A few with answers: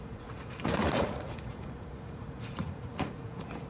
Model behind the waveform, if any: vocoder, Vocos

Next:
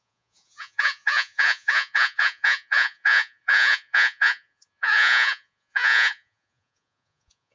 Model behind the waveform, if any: vocoder, Vocos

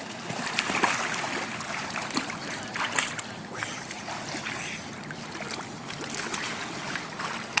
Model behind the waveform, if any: none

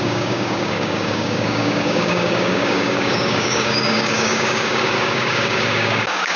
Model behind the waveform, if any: codec, DAC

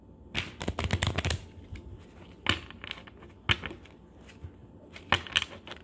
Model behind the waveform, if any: none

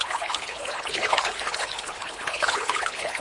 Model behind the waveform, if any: codec, HILCodec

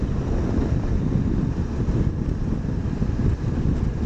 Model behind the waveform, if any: none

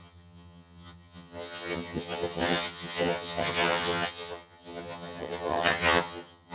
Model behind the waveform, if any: vocoder, HiFi-GAN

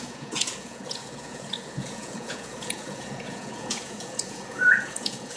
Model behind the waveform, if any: vocoder, Vocos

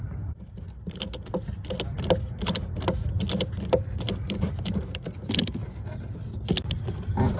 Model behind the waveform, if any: none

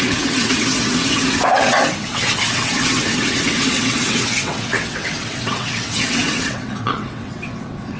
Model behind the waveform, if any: vocoder, WaveNeXt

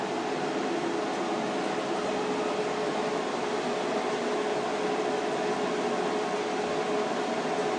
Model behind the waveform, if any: none